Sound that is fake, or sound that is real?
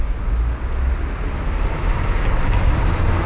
real